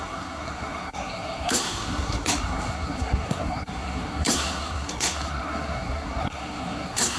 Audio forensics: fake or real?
fake